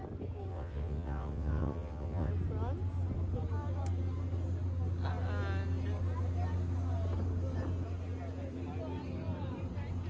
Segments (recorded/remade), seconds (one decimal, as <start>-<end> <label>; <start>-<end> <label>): 0.0-0.5 recorded; 0.5-2.3 remade; 2.3-10.1 recorded